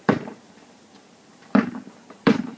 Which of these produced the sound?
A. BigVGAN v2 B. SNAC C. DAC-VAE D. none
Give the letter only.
A